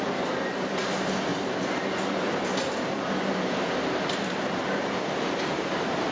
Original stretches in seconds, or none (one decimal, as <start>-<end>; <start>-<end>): none